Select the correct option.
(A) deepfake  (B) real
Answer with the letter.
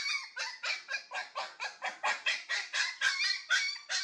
B